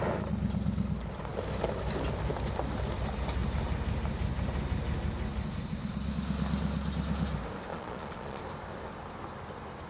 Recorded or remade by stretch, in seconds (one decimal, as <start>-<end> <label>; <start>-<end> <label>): 0.0-7.7 recorded; 7.7-8.4 remade; 8.4-9.9 recorded